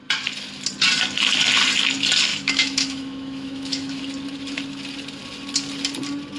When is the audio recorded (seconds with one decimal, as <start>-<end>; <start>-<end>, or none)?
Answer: 0.0-2.3; 4.0-6.4